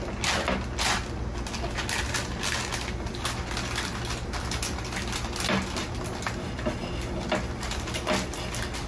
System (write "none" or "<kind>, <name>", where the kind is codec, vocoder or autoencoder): none